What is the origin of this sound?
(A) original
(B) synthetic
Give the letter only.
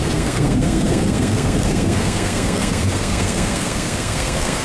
B